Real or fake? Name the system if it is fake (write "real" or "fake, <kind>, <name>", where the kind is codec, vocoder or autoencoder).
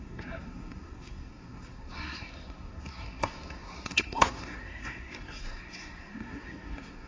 fake, codec, SNAC